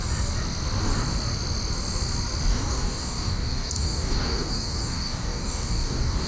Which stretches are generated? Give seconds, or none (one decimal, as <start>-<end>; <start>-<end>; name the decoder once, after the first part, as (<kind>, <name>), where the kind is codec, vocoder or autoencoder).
2.5-6.3 (codec, DAC)